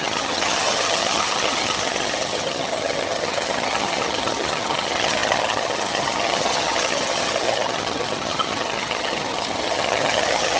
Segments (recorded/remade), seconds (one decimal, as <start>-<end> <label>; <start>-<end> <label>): 0.0-10.6 remade